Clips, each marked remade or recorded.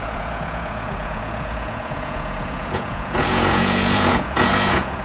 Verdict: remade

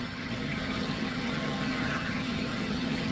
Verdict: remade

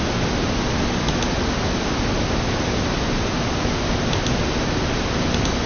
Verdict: recorded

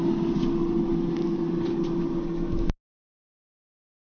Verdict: recorded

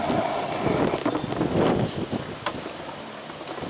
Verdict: recorded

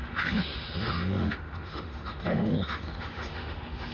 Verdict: remade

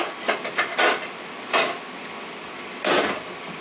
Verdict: recorded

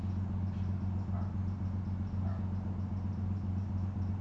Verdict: recorded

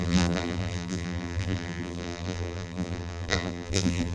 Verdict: remade